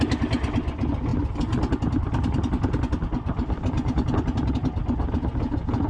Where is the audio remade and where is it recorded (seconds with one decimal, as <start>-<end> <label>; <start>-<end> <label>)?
0.0-5.9 recorded